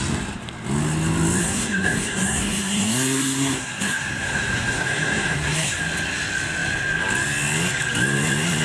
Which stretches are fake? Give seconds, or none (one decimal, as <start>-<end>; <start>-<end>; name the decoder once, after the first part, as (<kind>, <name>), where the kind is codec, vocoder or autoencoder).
1.4-5.8 (codec, SNAC)